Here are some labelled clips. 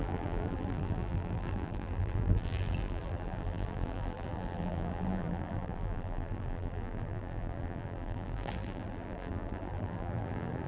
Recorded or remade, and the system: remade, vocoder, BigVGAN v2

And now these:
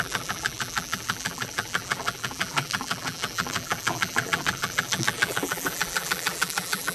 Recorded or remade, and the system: remade, vocoder, BigVGAN v2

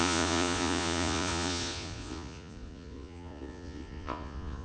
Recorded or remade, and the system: remade, vocoder, Vocos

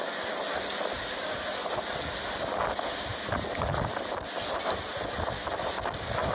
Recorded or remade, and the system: recorded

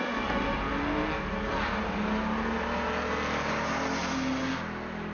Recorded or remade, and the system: recorded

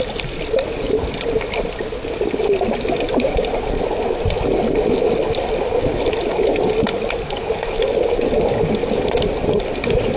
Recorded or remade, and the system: recorded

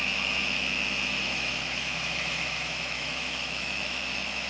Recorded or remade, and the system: remade, autoencoder, DAC-VAE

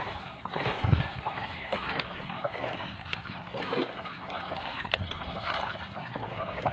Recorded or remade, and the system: remade, codec, SNAC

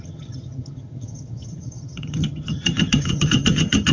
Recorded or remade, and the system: remade, vocoder, HiFi-GAN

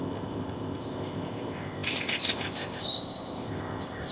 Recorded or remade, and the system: remade, codec, ZipCodec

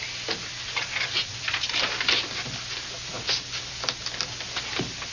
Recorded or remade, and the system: recorded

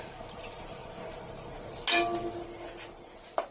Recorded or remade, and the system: recorded